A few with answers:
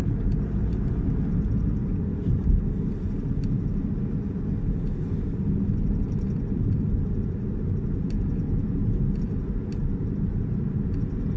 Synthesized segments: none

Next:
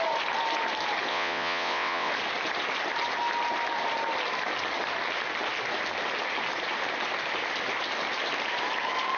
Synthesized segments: 1.1-2.1

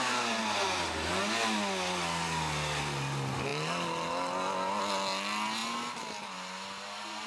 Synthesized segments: none

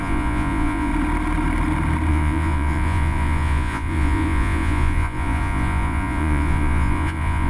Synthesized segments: 0.0-0.9; 2.1-7.5

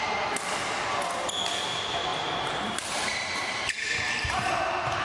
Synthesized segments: 2.1-4.6